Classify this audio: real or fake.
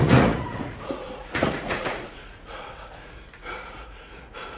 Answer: fake